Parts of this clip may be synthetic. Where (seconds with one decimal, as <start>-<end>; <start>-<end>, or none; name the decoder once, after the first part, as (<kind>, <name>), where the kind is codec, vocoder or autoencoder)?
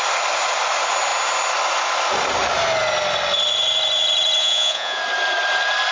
4.4-5.0 (vocoder, Vocos)